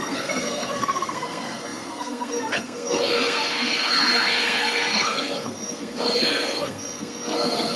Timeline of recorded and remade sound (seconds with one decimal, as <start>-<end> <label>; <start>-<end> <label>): 0.0-7.8 remade